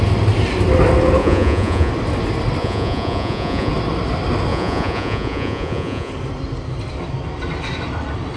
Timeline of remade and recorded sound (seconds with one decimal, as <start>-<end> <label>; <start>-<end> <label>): 0.0-1.2 recorded; 1.2-1.9 remade; 1.9-2.6 recorded; 2.6-3.7 remade; 3.7-4.5 recorded; 4.5-6.1 remade; 6.1-8.4 recorded